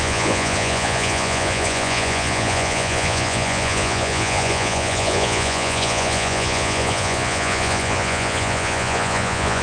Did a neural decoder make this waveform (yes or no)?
yes